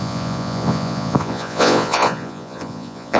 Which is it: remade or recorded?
remade